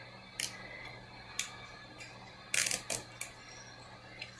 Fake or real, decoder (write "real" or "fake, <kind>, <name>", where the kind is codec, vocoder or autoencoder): real